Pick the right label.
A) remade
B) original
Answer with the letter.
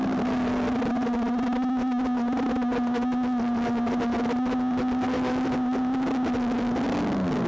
B